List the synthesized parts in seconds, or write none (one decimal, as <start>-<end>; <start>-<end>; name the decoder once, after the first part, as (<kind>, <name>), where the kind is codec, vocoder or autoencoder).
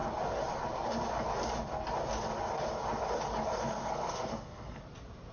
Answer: 3.6-4.8 (codec, SNAC)